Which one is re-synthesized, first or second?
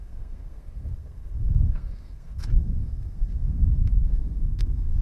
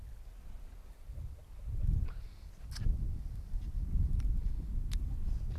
first